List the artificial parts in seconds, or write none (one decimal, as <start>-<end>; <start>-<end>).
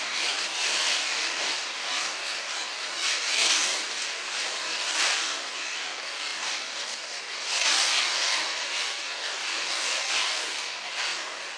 0.0-11.6